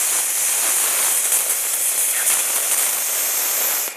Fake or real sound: real